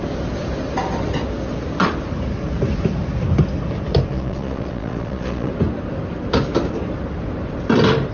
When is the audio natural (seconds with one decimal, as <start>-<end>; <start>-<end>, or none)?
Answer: 0.0-4.1; 5.5-8.1